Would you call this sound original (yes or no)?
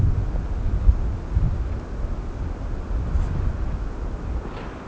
yes